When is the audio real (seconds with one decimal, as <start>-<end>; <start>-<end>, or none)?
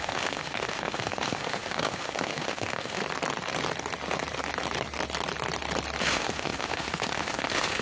3.0-6.0